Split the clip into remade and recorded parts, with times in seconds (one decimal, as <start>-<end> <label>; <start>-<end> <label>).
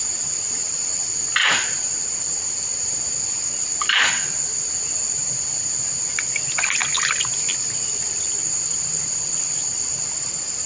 0.0-8.4 recorded; 8.4-10.7 remade